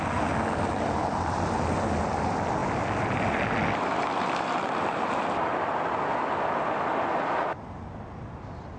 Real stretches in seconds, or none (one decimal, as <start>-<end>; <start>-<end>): 0.0-2.6; 4.0-8.8